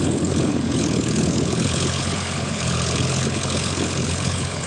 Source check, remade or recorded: remade